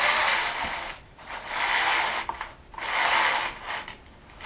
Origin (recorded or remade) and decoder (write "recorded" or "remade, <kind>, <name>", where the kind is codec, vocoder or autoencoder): recorded